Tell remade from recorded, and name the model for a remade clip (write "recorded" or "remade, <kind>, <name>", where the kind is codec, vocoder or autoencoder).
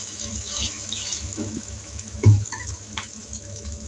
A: remade, autoencoder, DAC-VAE